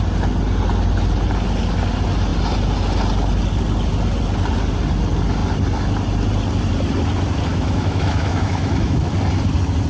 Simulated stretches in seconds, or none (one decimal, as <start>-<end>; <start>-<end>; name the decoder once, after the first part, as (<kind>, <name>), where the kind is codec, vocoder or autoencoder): 7.5-9.1 (autoencoder, DAC-VAE)